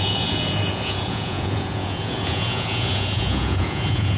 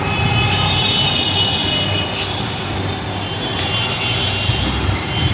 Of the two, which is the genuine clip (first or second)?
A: second